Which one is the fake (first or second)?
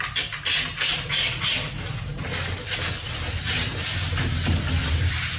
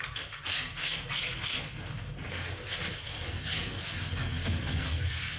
second